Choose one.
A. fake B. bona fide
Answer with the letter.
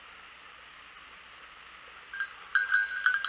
B